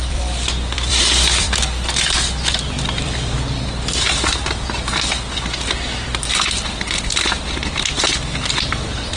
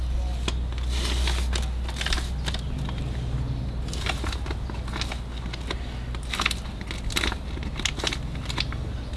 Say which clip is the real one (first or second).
second